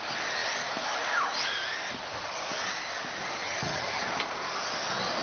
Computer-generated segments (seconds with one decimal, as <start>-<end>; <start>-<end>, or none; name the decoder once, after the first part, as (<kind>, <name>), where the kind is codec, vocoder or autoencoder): 3.4-4.0 (vocoder, HiFi-GAN)